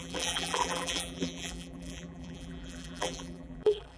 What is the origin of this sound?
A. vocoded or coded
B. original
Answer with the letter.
A